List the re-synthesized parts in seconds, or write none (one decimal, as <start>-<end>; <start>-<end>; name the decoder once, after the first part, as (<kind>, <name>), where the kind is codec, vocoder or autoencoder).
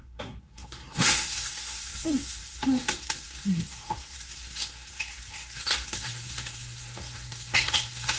0.0-8.2 (codec, SNAC)